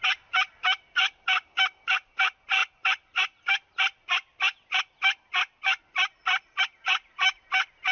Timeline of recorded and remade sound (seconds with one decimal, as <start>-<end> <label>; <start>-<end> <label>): 0.0-7.9 recorded